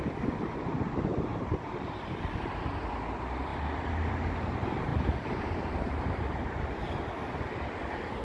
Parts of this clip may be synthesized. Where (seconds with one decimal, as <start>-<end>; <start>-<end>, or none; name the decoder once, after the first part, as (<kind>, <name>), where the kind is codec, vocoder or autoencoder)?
1.3-2.0 (vocoder, BigVGAN v2); 4.9-7.0

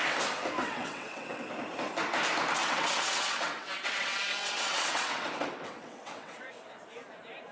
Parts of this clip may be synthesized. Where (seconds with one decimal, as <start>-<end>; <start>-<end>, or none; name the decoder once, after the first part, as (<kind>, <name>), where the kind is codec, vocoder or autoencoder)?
0.6-1.4 (vocoder, WaveNeXt); 2.6-6.5